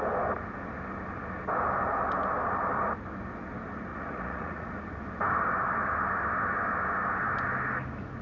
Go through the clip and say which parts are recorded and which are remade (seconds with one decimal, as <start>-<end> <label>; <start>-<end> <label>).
0.0-3.9 recorded; 3.9-4.7 remade; 4.7-8.2 recorded